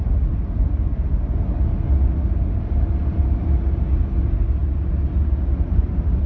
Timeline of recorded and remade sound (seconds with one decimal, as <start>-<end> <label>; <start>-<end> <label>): 0.0-6.3 recorded